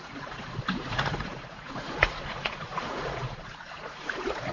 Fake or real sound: fake